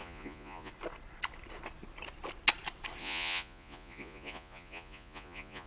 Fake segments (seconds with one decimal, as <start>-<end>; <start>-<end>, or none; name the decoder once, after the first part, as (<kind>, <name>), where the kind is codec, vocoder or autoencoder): 0.0-0.7 (vocoder, Vocos); 3.0-5.7